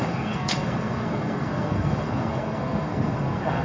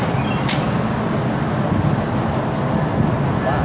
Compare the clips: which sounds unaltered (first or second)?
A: second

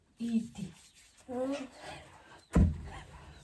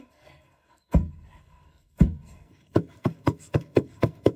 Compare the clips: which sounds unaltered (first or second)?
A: first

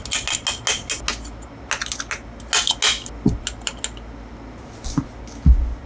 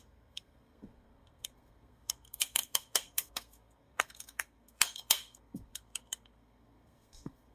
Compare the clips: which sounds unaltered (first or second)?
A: first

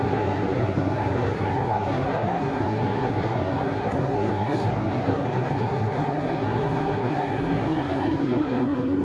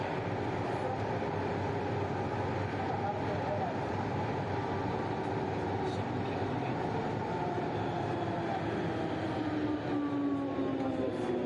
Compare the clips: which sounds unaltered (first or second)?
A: second